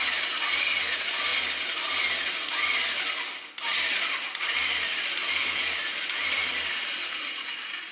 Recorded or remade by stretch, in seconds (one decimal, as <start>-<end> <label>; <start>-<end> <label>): 0.0-5.4 recorded; 5.4-7.9 remade